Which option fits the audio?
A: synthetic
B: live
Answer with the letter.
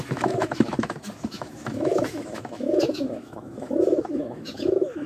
A